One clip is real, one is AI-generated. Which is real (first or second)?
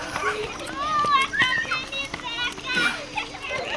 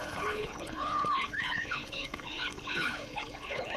first